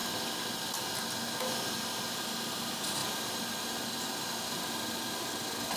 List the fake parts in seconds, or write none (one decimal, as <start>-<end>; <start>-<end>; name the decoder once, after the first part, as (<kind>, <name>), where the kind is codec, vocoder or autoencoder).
none